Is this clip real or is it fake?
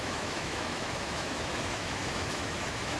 fake